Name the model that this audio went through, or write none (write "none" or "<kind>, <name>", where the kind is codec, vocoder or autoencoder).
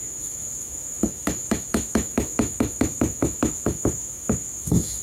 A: autoencoder, DAC-VAE